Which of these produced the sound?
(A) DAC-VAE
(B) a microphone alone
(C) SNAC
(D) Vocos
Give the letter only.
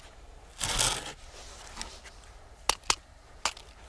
B